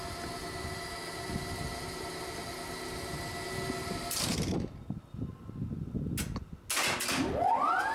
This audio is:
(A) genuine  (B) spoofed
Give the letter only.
A